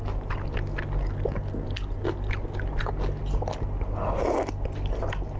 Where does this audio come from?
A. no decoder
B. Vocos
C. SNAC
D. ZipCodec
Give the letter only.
A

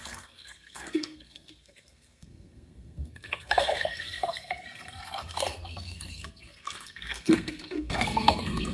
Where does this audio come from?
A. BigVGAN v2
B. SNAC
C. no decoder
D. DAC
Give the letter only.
B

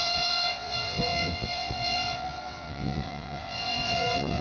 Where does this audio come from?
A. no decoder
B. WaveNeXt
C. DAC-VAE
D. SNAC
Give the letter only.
B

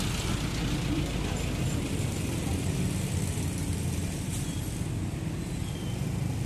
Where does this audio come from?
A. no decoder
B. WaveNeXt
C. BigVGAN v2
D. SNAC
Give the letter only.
A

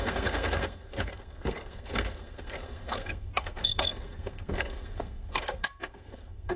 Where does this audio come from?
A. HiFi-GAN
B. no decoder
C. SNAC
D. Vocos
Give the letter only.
C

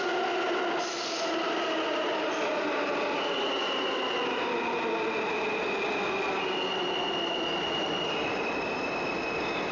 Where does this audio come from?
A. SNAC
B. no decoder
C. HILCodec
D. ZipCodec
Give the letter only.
B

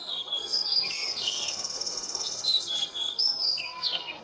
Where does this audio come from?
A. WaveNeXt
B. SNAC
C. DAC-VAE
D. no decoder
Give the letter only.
B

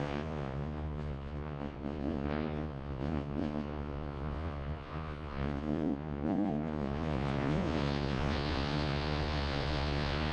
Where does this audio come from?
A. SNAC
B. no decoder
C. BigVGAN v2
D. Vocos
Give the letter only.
D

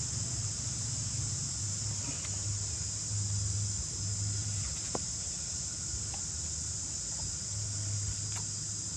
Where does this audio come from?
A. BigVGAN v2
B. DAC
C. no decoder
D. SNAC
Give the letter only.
C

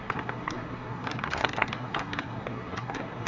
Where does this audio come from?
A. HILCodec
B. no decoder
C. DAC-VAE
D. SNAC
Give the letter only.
D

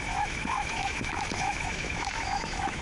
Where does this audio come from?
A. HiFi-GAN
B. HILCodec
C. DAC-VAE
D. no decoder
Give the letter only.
C